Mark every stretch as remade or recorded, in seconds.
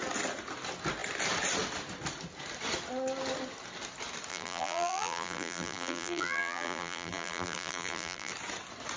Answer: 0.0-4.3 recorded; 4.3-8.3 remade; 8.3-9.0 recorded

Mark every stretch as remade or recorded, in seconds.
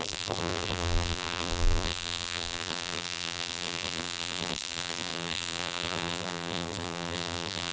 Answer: 0.0-7.7 remade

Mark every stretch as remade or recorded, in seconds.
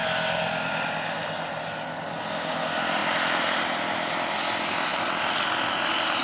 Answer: 0.0-3.0 recorded; 3.0-3.6 remade; 3.6-6.2 recorded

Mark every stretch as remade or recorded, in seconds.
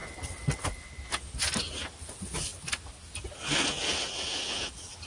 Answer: 0.0-5.1 recorded